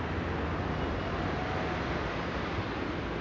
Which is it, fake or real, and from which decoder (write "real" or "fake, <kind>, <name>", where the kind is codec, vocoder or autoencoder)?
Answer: real